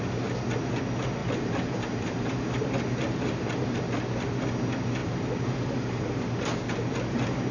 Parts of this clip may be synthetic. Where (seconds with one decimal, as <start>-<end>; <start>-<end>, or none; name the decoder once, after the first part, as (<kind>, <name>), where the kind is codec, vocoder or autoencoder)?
1.2-3.8 (vocoder, BigVGAN v2); 5.0-6.4